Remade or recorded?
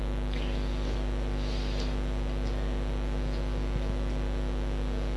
recorded